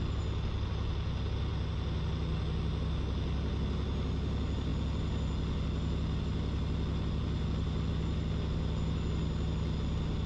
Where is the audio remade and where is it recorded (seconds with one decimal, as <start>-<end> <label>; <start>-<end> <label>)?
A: 0.0-10.3 recorded